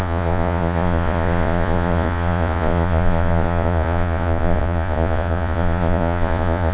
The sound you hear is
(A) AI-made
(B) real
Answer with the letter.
A